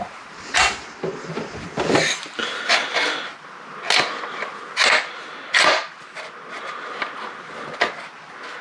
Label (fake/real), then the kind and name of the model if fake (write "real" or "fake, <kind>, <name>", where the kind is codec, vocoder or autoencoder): real